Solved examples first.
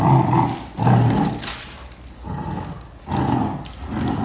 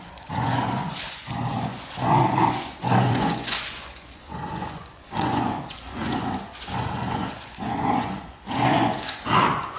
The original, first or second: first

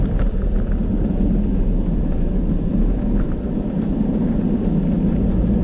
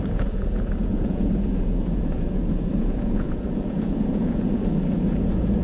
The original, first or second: first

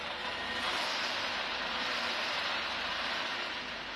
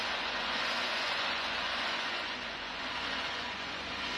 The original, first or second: first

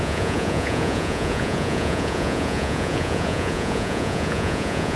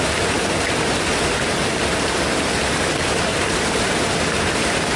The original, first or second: second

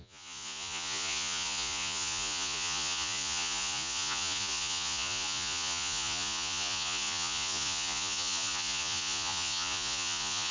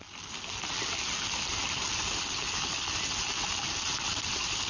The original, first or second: second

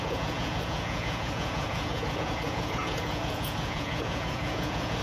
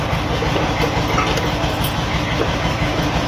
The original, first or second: second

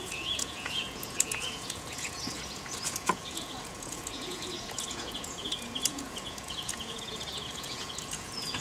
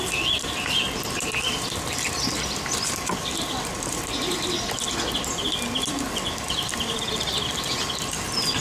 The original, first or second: second